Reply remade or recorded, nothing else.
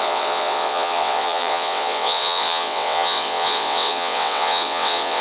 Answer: remade